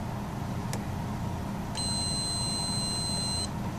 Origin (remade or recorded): recorded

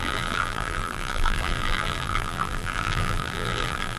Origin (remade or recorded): remade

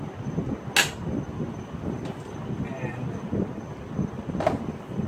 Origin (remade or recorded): recorded